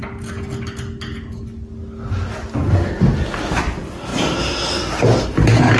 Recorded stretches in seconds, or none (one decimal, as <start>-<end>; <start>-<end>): 0.0-5.8